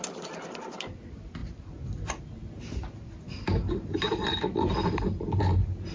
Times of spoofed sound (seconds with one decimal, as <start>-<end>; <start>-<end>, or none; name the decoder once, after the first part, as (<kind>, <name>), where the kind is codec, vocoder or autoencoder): none